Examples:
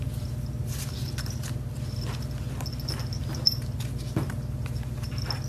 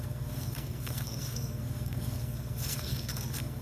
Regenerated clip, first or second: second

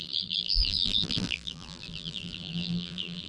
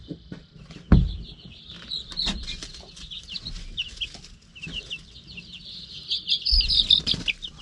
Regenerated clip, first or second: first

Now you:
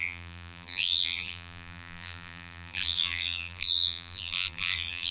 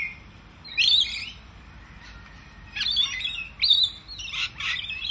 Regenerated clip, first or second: first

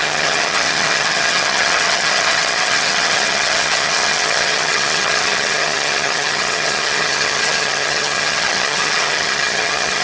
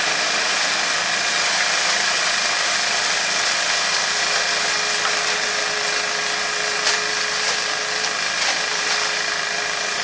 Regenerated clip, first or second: first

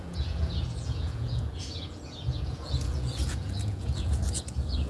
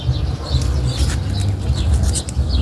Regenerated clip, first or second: first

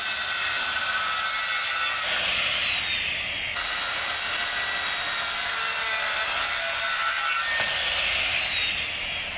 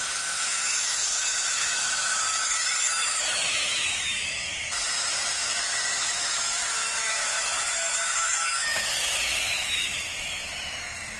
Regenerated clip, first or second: second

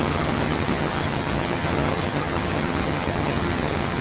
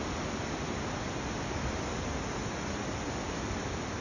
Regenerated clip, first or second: first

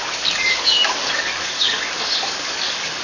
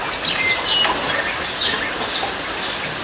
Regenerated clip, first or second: first